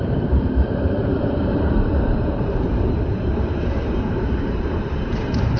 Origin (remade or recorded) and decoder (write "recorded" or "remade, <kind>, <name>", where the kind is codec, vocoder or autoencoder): remade, vocoder, BigVGAN v2